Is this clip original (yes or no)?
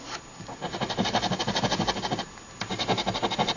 yes